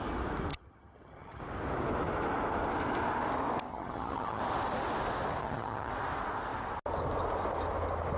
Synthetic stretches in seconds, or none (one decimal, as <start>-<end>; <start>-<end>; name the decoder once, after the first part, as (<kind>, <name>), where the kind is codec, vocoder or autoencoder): 0.5-1.4 (vocoder, HiFi-GAN); 3.7-4.4; 5.4-5.9